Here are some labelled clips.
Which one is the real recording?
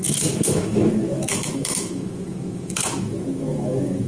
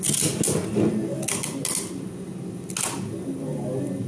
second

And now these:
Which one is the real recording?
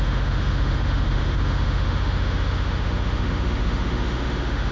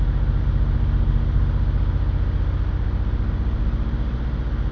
second